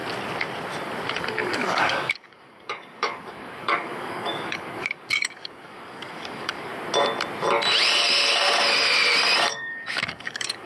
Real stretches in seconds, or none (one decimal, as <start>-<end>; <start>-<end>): 0.0-1.1; 6.7-9.5